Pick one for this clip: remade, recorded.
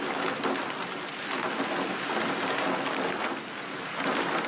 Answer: recorded